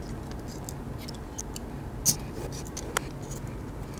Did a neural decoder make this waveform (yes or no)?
no